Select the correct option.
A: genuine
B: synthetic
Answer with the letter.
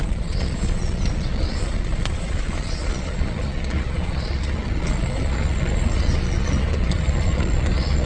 B